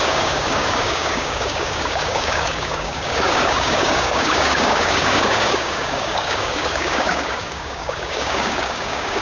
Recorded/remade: remade